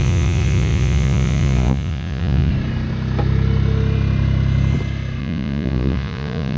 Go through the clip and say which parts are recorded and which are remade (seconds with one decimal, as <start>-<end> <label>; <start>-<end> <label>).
0.0-2.5 remade; 2.5-5.2 recorded; 5.2-6.6 remade